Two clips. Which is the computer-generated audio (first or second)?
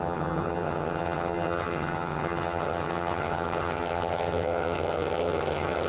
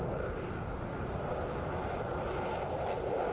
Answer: first